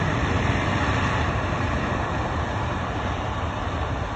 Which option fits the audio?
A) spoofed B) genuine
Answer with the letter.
A